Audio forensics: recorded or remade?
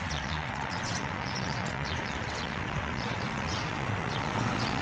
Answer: remade